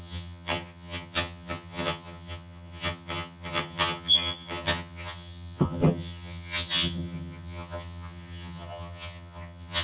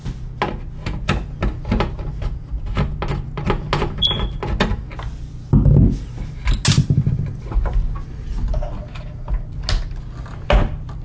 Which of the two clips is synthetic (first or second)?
first